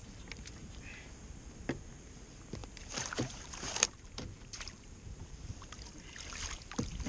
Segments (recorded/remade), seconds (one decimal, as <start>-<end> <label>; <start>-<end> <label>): 0.0-0.7 remade; 0.7-2.6 recorded; 2.6-5.5 remade; 5.5-7.1 recorded